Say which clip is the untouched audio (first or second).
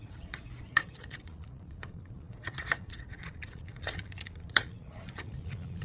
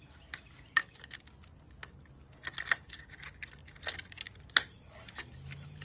second